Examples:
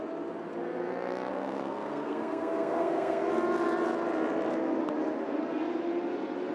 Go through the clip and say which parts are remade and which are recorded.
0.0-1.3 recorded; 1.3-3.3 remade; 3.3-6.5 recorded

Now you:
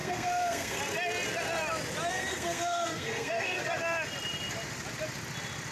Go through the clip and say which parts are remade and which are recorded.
0.0-0.8 remade; 0.8-2.1 recorded; 2.1-3.6 remade; 3.6-5.7 recorded

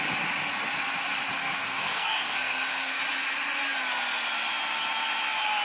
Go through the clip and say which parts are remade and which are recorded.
0.0-1.4 recorded; 1.4-3.0 remade; 3.0-5.6 recorded

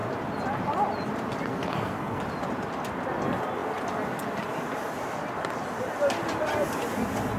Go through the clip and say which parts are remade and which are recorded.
0.0-1.5 recorded; 1.5-2.2 remade; 2.2-7.4 recorded